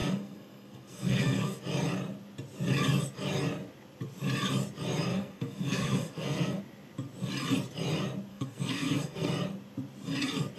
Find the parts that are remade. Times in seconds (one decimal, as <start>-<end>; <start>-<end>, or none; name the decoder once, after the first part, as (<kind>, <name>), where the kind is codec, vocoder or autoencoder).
0.0-1.6 (codec, SNAC); 5.1-6.6; 8.3-9.3